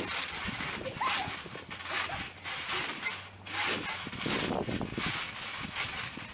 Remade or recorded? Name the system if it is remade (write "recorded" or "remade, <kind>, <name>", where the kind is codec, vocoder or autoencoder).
recorded